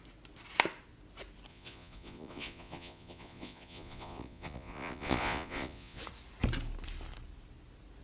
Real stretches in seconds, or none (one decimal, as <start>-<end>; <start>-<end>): 0.0-1.5; 6.0-8.0